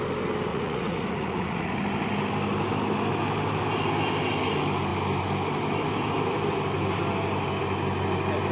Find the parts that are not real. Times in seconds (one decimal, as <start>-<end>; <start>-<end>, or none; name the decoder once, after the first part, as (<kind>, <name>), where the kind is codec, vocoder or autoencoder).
0.5-1.7 (vocoder, Vocos)

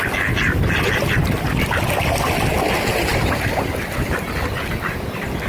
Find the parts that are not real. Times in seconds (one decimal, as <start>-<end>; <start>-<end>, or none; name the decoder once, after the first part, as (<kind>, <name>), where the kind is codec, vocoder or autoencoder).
none

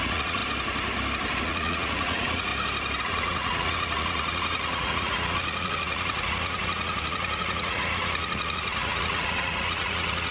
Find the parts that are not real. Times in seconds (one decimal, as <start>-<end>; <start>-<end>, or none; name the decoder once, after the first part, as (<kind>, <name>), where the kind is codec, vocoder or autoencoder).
0.0-0.4 (vocoder, Vocos); 1.4-2.5; 3.0-10.3